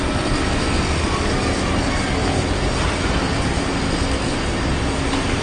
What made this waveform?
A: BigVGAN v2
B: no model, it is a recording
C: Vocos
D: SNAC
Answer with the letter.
B